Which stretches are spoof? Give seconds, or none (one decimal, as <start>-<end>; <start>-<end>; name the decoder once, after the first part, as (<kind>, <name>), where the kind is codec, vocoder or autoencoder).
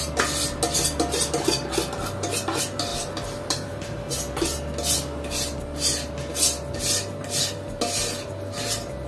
2.9-4.0 (vocoder, BigVGAN v2)